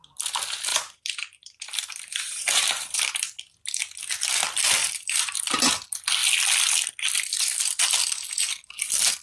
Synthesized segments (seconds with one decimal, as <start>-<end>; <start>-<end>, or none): 0.7-3.1; 4.8-5.4